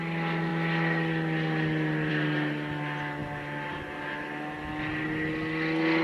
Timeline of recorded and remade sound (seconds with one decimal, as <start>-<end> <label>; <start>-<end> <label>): 0.0-6.0 recorded